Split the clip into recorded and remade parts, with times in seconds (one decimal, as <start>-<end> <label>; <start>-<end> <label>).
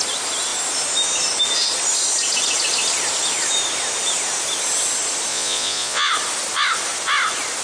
0.0-5.3 recorded; 5.3-6.1 remade; 6.1-7.6 recorded